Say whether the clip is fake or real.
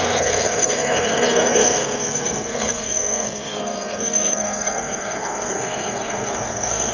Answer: fake